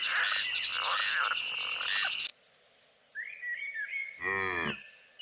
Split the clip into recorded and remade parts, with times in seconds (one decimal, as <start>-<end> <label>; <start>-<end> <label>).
0.0-5.2 recorded